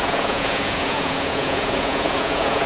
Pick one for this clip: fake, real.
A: fake